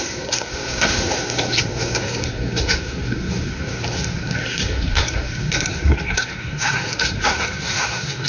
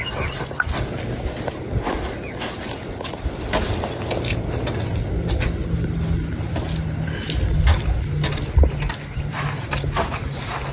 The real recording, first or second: second